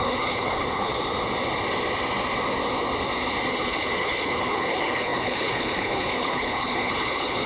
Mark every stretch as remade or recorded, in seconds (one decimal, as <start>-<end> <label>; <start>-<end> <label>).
0.0-0.9 remade; 0.9-3.5 recorded; 3.5-7.5 remade